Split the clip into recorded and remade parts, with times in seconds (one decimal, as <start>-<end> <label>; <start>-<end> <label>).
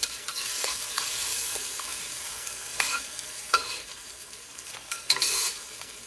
0.0-6.1 remade